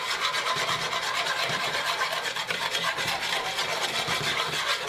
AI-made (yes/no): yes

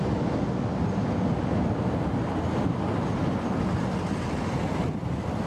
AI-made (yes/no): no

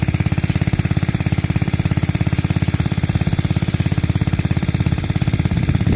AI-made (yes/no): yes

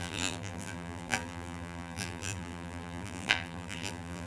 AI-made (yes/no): yes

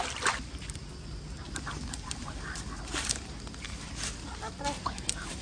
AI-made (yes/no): no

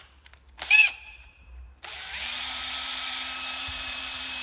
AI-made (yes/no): yes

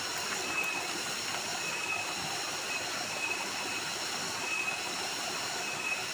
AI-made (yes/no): no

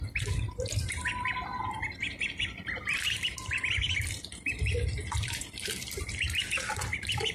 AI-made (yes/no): yes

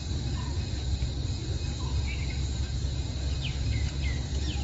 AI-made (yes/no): no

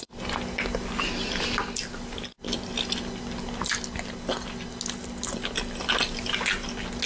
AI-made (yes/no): no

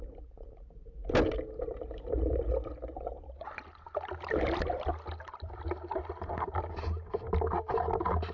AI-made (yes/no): no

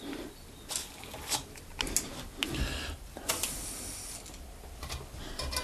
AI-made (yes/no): no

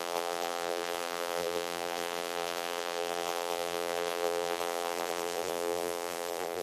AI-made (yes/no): yes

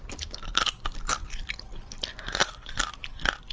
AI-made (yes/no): yes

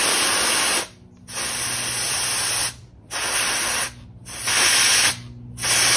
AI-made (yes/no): no